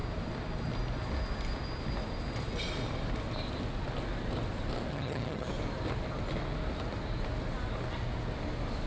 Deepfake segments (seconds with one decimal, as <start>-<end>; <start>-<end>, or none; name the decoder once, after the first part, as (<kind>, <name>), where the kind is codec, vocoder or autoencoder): 4.9-5.5 (vocoder, HiFi-GAN)